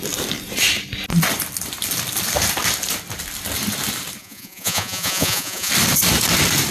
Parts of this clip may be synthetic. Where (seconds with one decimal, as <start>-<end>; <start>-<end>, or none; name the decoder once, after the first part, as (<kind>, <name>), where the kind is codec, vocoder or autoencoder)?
4.2-5.7 (vocoder, Vocos)